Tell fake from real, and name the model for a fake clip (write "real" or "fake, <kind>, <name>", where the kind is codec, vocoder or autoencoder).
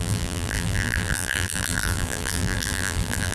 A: fake, vocoder, BigVGAN v2